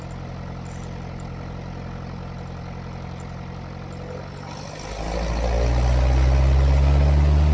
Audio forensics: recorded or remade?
recorded